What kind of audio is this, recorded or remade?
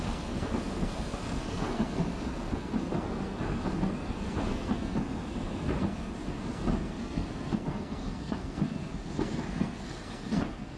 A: remade